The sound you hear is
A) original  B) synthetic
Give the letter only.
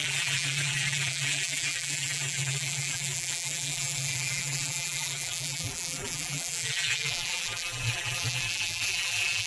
B